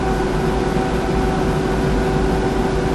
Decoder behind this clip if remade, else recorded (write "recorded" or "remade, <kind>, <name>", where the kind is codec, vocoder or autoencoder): recorded